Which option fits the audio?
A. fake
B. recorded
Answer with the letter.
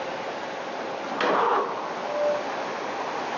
B